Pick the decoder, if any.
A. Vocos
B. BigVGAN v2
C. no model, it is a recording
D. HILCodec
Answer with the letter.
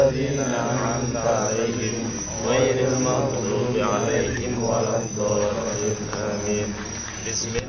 C